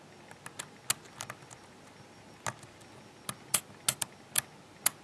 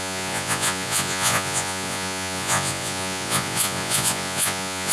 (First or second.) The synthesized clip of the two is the second